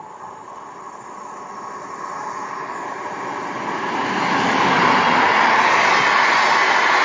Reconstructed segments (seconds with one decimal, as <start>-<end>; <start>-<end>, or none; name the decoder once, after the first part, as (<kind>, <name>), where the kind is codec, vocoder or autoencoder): none